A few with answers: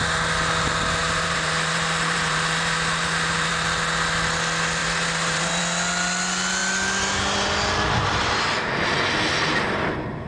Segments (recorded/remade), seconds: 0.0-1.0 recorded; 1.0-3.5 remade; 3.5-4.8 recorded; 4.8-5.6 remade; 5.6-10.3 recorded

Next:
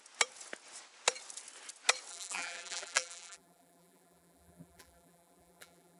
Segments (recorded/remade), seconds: 0.0-2.1 recorded; 2.1-6.0 remade

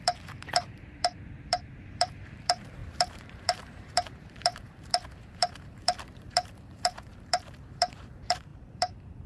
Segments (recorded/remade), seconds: 0.0-9.3 remade

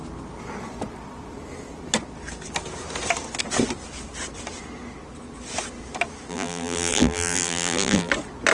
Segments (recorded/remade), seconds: 0.0-6.3 recorded; 6.3-8.1 remade; 8.1-8.5 recorded

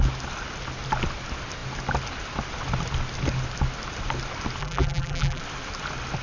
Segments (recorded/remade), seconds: 0.0-4.6 recorded; 4.6-5.4 remade; 5.4-6.2 recorded

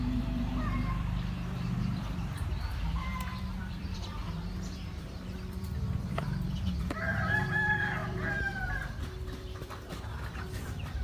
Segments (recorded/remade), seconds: 0.0-4.2 remade; 4.2-5.0 recorded; 5.0-11.0 remade

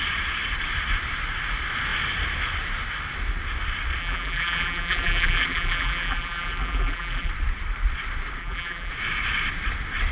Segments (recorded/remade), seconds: 0.0-4.0 recorded; 4.0-7.3 remade; 7.3-8.4 recorded; 8.4-8.9 remade; 8.9-10.1 recorded